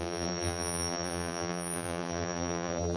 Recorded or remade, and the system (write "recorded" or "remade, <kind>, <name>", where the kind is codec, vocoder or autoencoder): remade, vocoder, BigVGAN v2